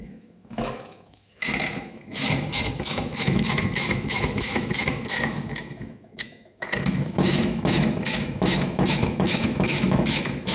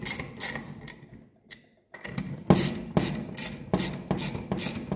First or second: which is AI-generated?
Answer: first